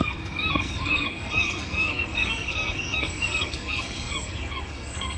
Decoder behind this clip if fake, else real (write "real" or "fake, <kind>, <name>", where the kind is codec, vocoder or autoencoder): fake, codec, SNAC